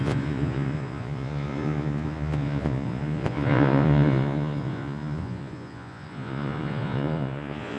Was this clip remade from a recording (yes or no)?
yes